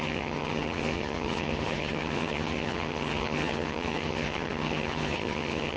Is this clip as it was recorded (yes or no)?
no